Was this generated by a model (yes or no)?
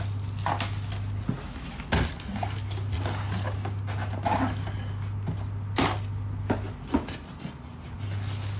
no